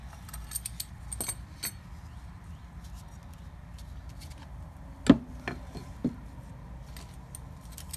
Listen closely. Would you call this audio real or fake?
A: real